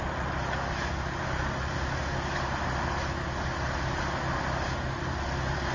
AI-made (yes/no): no